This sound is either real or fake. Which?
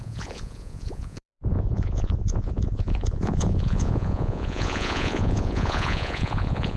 fake